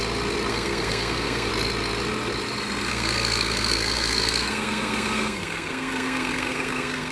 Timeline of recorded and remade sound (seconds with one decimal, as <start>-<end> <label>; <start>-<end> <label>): 0.0-0.5 recorded; 0.5-1.5 remade; 1.5-2.9 recorded; 2.9-7.1 remade